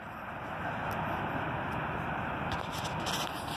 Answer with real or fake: real